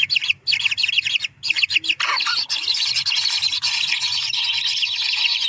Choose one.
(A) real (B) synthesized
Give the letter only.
A